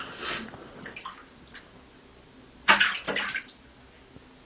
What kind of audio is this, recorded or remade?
recorded